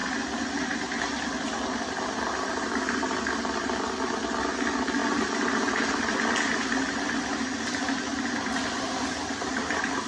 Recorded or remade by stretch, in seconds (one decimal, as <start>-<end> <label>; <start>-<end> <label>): 0.0-10.1 recorded